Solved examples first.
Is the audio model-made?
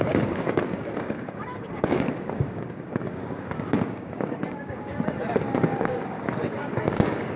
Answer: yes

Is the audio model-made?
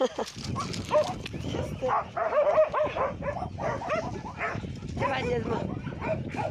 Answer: no